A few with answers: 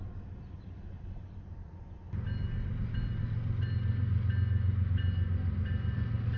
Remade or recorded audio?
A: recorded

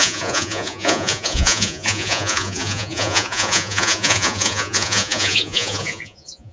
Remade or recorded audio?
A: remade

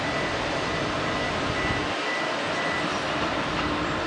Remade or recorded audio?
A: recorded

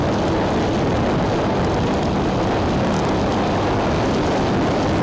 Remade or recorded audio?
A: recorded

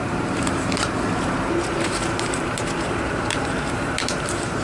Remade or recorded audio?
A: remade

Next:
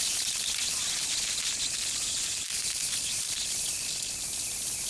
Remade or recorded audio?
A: recorded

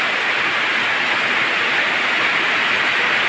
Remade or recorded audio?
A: recorded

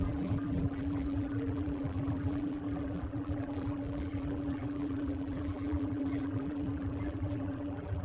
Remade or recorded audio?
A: remade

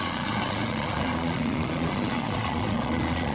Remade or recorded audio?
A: remade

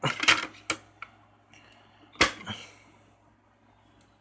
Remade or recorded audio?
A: recorded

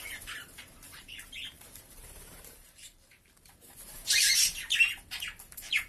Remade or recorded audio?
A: remade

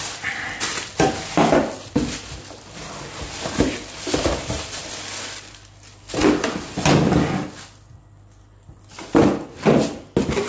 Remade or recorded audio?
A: recorded